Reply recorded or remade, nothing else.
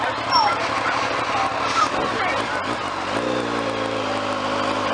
recorded